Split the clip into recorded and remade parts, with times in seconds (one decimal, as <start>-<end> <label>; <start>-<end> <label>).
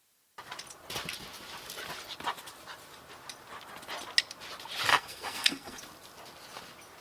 0.0-4.9 recorded; 4.9-5.8 remade; 5.8-7.0 recorded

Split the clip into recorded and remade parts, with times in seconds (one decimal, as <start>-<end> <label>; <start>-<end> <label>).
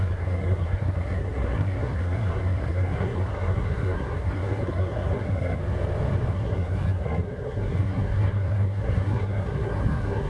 0.0-5.6 remade; 5.6-6.3 recorded; 6.3-10.3 remade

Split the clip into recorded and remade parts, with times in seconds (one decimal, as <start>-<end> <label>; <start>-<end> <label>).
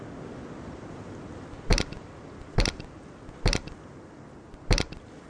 0.0-5.3 recorded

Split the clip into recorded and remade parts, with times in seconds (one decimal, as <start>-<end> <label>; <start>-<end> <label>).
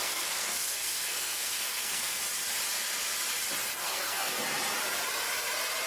0.0-2.2 remade; 2.2-3.8 recorded; 3.8-4.3 remade; 4.3-5.9 recorded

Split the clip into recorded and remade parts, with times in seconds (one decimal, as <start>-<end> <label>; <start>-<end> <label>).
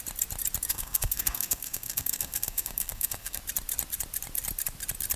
0.0-0.7 recorded; 0.7-3.4 remade; 3.4-5.2 recorded